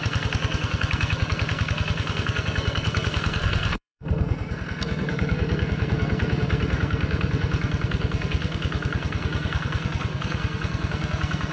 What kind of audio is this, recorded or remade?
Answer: remade